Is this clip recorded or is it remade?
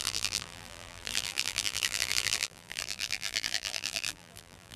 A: remade